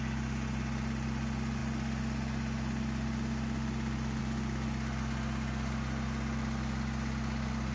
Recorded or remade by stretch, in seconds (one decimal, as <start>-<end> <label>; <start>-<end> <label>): 0.0-7.7 recorded

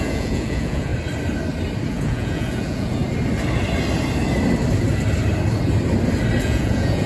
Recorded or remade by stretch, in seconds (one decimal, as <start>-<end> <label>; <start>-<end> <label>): 0.0-0.9 remade; 0.9-1.9 recorded; 1.9-3.0 remade; 3.0-6.4 recorded; 6.4-7.1 remade

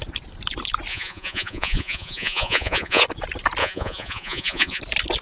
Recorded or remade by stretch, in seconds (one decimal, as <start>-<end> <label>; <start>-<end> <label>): 0.0-0.9 recorded; 0.9-3.0 remade; 3.0-3.6 recorded; 3.6-4.8 remade; 4.8-5.2 recorded